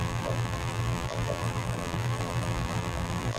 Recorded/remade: remade